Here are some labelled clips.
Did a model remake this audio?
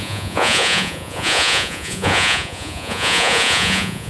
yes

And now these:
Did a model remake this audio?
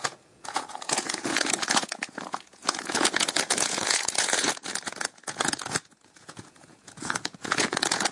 yes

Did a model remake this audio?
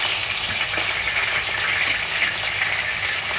no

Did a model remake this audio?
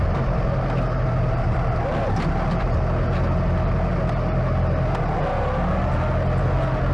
no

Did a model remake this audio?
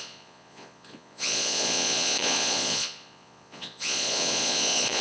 yes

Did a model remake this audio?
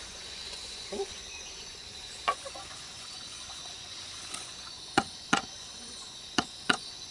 yes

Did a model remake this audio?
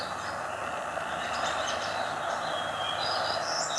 no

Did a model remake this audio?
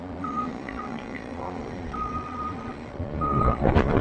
yes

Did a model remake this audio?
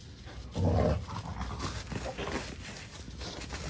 no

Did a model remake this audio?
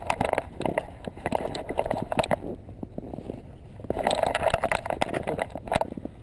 no